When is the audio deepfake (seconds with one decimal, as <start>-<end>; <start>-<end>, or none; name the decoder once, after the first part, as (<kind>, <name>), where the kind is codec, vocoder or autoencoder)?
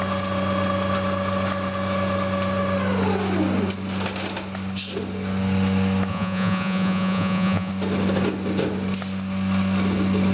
6.1-7.7 (vocoder, Vocos)